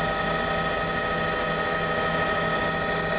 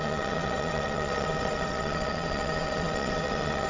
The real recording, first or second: first